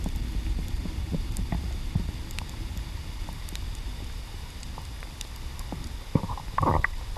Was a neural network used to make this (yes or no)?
no